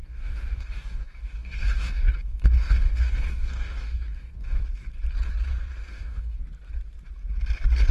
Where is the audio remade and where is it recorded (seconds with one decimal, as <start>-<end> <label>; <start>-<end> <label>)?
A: 0.0-4.6 remade; 4.6-5.9 recorded; 5.9-6.4 remade; 6.4-7.9 recorded